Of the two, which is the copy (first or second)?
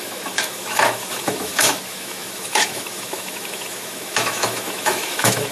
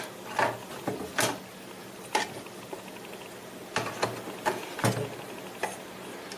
first